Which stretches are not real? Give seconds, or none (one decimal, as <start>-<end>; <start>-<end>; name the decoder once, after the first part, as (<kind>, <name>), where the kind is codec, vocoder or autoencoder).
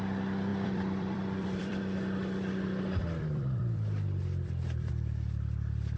0.5-1.8 (vocoder, BigVGAN v2); 3.0-4.9